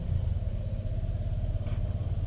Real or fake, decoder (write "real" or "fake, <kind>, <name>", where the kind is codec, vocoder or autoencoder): real